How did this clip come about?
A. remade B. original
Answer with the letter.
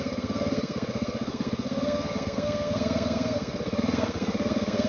A